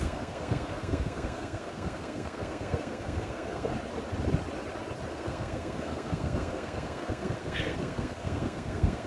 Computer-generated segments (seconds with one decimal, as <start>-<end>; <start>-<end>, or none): 0.0-3.7; 5.1-9.1